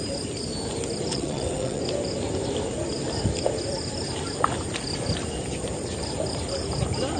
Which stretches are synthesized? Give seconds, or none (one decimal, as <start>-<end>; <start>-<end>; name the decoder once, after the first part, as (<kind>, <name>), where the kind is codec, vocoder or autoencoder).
1.1-1.8 (vocoder, WaveNeXt)